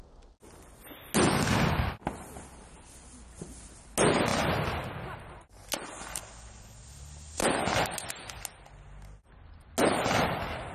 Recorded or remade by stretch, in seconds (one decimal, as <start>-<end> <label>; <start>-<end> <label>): 0.0-10.7 recorded